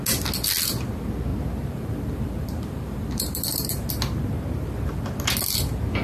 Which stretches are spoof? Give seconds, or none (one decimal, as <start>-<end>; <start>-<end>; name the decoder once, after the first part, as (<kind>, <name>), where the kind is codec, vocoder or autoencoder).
1.3-4.7 (vocoder, BigVGAN v2)